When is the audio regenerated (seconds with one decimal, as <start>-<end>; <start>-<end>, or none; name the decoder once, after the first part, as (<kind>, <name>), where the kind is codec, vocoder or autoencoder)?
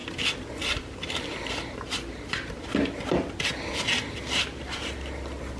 none